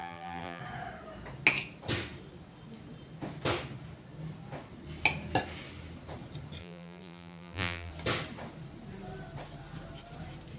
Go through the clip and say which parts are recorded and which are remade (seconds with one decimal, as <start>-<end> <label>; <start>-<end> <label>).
0.0-0.6 remade; 0.6-6.6 recorded; 6.6-7.9 remade; 7.9-10.6 recorded